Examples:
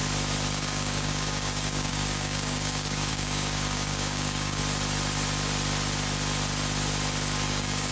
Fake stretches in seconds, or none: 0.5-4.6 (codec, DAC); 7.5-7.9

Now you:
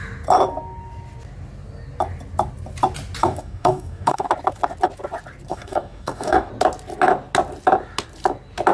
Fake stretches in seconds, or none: 3.2-4.3 (codec, DAC); 5.5-6.5

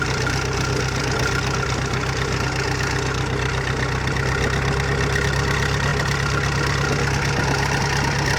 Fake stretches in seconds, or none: none

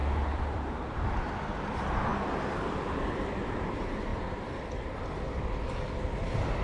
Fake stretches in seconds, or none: none

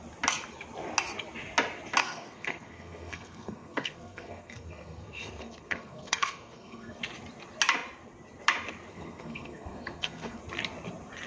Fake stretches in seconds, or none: 2.0-7.0 (codec, SNAC); 8.9-10.4

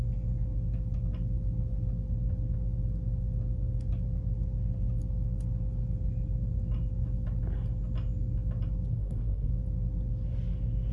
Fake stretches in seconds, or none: 8.9-9.5 (codec, SNAC)

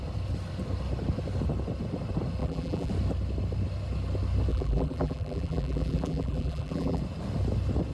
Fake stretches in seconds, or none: 2.4-2.9 (vocoder, BigVGAN v2); 4.5-7.0

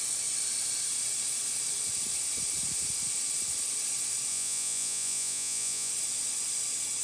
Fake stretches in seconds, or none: 4.3-5.9 (vocoder, Vocos)